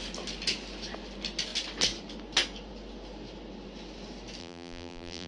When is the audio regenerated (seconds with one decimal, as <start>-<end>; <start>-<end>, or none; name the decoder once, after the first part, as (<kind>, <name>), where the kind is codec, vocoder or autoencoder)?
4.4-5.3 (vocoder, BigVGAN v2)